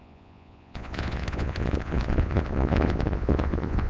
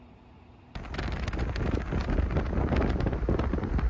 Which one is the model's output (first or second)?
first